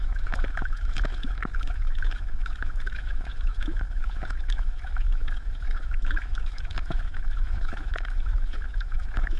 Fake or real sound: fake